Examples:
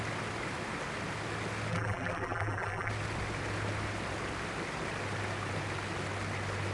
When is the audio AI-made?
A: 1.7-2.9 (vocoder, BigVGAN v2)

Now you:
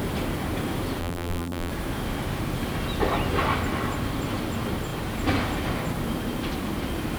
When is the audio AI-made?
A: 1.0-1.7 (vocoder, BigVGAN v2)